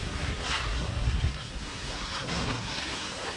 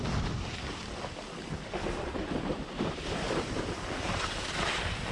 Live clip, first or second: second